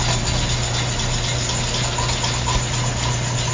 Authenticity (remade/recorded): recorded